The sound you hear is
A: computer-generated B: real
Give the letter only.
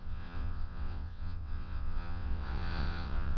A